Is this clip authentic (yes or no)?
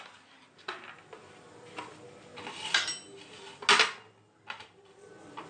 yes